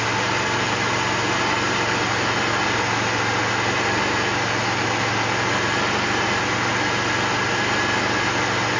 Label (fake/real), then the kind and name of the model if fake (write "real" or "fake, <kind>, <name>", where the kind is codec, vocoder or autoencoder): real